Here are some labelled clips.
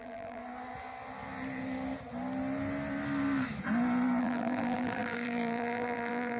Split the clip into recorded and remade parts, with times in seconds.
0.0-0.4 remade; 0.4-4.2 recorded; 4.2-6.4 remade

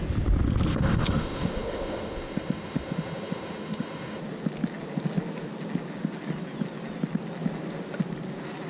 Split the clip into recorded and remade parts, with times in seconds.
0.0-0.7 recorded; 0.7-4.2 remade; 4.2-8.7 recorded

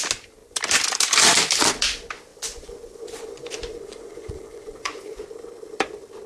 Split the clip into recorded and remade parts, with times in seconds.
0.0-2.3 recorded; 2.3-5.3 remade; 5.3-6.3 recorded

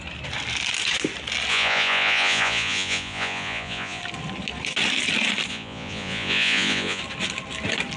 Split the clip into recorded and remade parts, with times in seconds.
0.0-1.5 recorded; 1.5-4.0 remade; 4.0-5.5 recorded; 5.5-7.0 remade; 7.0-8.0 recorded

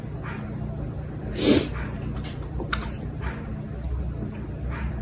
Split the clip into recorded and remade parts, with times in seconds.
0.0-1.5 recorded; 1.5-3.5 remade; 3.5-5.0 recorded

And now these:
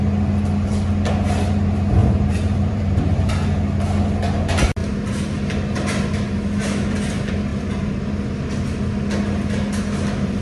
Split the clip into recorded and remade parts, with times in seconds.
0.0-2.0 recorded; 2.0-3.3 remade; 3.3-10.4 recorded

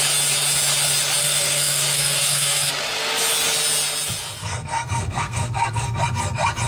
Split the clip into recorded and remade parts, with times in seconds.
0.0-1.2 recorded; 1.2-2.7 remade; 2.7-4.4 recorded; 4.4-6.0 remade; 6.0-6.7 recorded